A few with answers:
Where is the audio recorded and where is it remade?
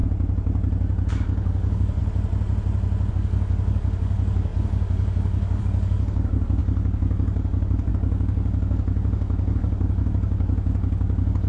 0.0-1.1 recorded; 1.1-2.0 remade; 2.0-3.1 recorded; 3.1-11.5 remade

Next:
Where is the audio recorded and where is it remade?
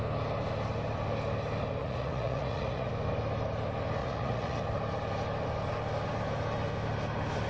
0.0-1.8 recorded; 1.8-2.9 remade; 2.9-4.0 recorded; 4.0-4.6 remade; 4.6-7.5 recorded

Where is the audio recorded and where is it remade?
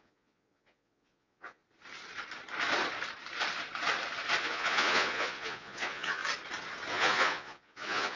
0.0-1.6 remade; 1.6-4.4 recorded; 4.4-6.2 remade; 6.2-6.9 recorded; 6.9-8.2 remade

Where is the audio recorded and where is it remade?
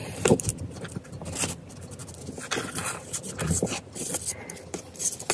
0.0-5.3 recorded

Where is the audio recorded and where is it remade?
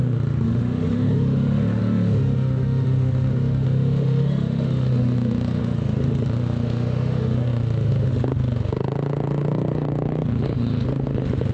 0.0-11.5 remade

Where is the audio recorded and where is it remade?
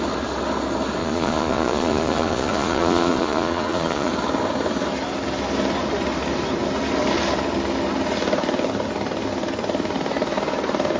0.0-1.0 recorded; 1.0-4.1 remade; 4.1-11.0 recorded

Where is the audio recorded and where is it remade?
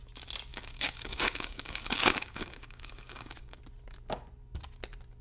0.0-0.5 recorded; 0.5-3.6 remade; 3.6-5.2 recorded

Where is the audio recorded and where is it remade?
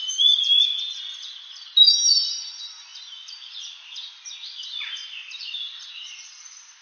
0.0-6.8 recorded